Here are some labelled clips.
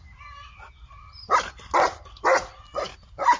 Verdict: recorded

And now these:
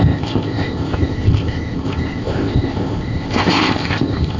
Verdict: remade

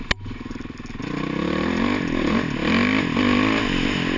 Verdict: recorded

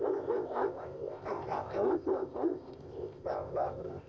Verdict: remade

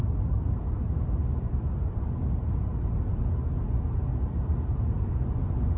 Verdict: recorded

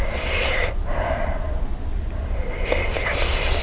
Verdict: recorded